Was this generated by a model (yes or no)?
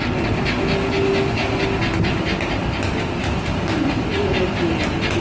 no